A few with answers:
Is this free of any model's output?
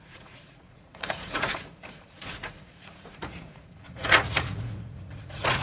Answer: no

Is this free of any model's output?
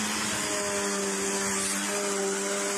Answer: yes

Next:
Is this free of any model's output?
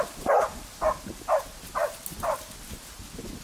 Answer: yes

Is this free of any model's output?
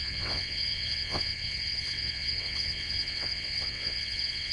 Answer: no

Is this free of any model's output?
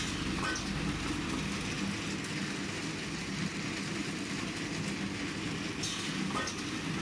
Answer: yes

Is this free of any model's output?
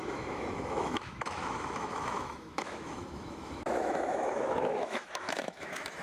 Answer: no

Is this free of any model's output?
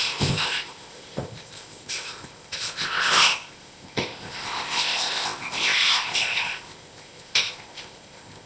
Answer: no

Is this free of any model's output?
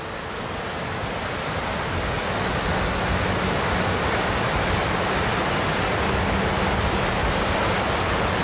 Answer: yes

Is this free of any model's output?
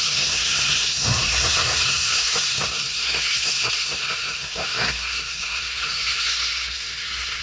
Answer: no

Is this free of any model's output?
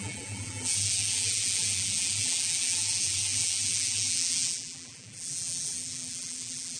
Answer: no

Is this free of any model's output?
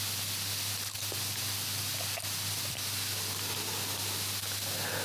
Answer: yes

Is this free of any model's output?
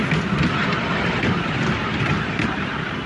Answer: no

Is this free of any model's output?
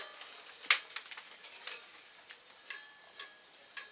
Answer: yes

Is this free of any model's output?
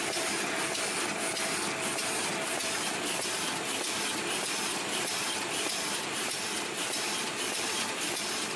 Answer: yes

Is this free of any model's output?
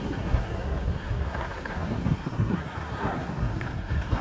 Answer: no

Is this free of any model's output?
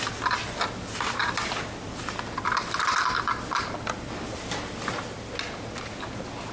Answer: yes